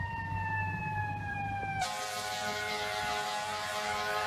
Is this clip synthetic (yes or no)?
yes